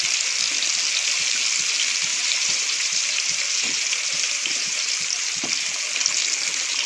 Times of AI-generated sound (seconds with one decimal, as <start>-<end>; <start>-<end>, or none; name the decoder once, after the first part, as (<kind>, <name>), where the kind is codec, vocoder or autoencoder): 2.1-5.4 (vocoder, BigVGAN v2)